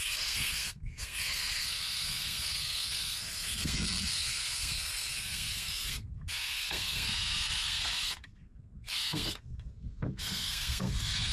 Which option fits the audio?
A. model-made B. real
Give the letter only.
A